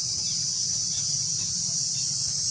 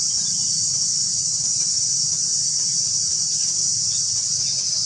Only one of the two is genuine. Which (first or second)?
second